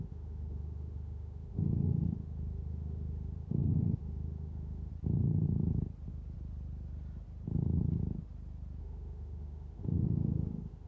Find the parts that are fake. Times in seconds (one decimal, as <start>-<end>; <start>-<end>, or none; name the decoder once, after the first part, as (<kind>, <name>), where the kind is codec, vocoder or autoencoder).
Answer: 0.0-4.9 (autoencoder, DAC-VAE); 8.8-10.9